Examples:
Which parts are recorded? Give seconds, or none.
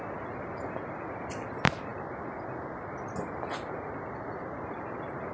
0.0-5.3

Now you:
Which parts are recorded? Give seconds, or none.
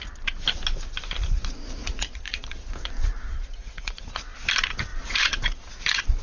0.0-1.8; 2.9-3.3; 4.0-4.9; 5.7-6.2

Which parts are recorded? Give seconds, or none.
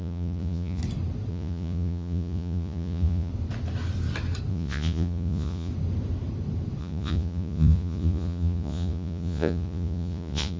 0.8-1.3; 3.3-4.5; 5.7-6.8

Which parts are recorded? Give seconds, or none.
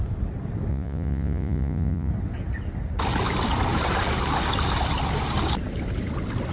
0.0-0.7; 2.1-6.5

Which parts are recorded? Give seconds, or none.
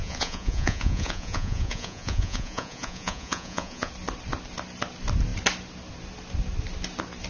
3.9-7.3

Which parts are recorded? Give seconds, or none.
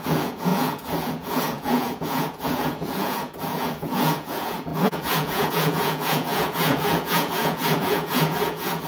none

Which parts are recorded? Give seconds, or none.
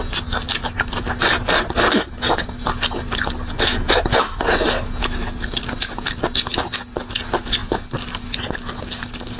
0.0-9.4